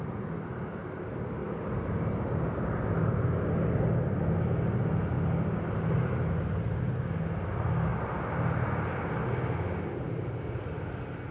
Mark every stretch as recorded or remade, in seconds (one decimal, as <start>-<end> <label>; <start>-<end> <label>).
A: 0.0-11.3 recorded